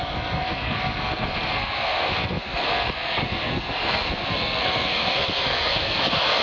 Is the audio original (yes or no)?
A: no